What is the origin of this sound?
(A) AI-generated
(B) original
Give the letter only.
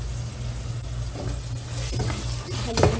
B